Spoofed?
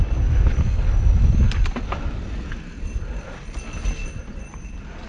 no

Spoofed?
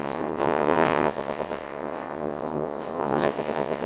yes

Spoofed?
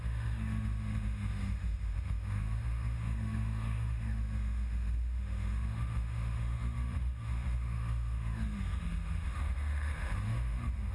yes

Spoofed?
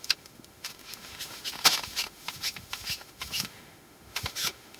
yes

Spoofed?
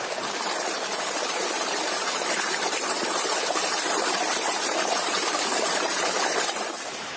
yes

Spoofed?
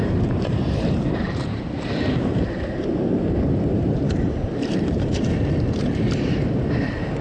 yes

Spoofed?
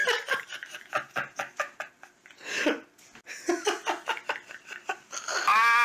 no